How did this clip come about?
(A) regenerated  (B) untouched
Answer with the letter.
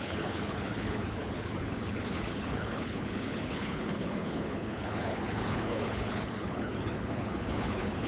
A